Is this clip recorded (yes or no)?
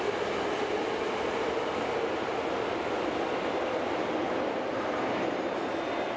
yes